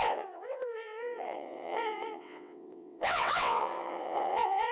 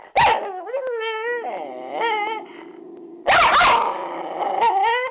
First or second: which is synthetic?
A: first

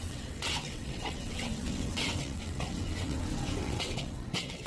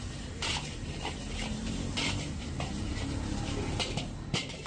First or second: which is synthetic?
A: first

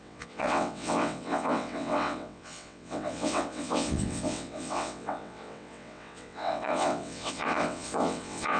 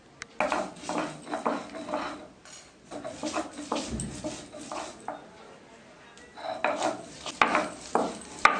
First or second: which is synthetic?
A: first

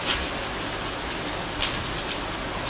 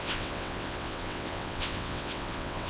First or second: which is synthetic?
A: second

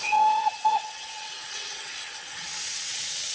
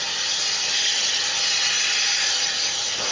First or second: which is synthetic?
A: first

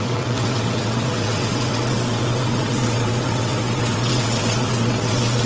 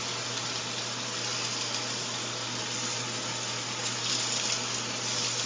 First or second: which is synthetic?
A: first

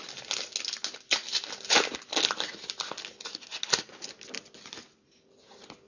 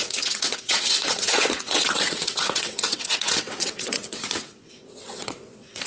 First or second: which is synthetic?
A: second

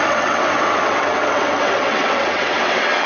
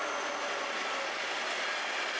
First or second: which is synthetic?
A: first